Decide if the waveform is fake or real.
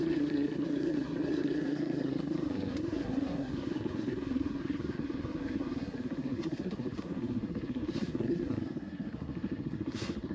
fake